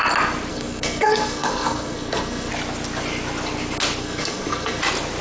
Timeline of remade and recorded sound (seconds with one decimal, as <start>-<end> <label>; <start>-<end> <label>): 0.0-0.5 recorded; 0.5-2.5 remade; 2.5-4.0 recorded; 4.0-4.8 remade; 4.8-5.2 recorded